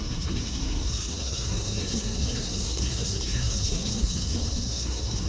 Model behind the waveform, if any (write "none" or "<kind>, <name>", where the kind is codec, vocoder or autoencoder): codec, SNAC